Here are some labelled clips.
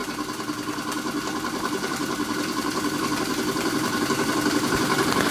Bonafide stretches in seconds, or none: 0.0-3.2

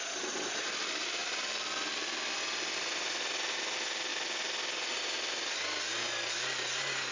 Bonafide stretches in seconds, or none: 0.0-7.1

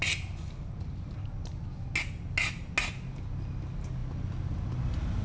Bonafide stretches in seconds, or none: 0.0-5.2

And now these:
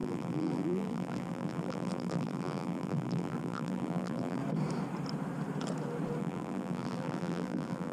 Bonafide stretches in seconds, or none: 4.4-6.2

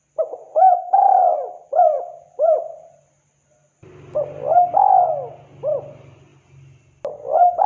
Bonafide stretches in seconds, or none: 0.0-1.2; 2.9-7.7

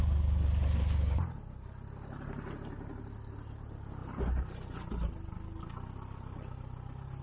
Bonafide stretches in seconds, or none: 0.0-4.0; 4.6-7.2

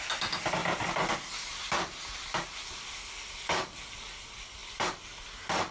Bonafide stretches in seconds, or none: 0.0-4.6

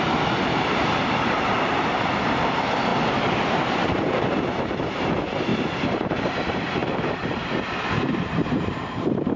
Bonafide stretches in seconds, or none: 2.9-3.7